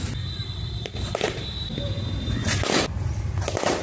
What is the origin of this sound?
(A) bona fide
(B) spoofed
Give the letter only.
A